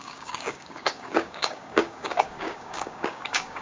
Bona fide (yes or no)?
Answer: no